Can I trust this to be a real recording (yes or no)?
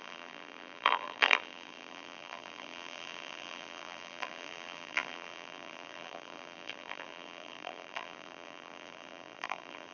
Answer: no